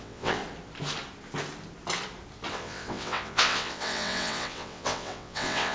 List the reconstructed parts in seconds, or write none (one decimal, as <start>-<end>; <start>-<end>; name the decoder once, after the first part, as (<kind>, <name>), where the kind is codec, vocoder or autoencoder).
0.0-0.4 (vocoder, WaveNeXt); 2.5-5.7